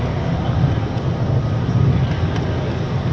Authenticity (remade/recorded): recorded